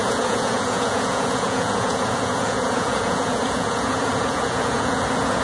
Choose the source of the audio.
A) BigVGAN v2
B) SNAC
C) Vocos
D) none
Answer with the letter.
C